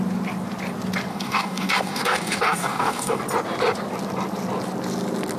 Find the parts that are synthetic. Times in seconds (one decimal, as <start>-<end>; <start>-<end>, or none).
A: 1.1-3.2